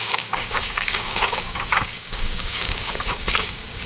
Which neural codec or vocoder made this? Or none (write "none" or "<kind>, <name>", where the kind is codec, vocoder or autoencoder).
codec, DAC